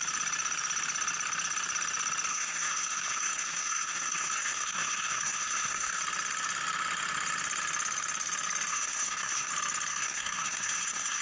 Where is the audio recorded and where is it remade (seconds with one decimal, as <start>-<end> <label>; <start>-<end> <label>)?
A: 0.0-2.3 recorded; 2.3-6.0 remade; 6.0-8.7 recorded; 8.7-9.5 remade; 9.5-9.9 recorded; 9.9-11.2 remade